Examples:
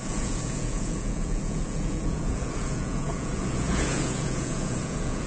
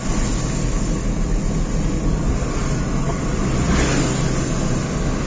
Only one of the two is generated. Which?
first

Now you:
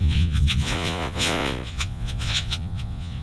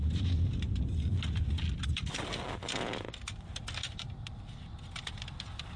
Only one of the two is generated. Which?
first